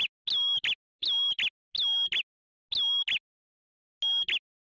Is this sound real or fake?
real